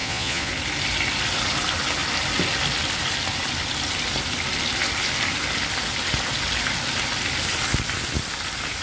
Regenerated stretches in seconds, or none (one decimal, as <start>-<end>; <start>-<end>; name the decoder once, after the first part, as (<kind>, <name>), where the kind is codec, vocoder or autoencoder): 0.0-0.5 (vocoder, Vocos)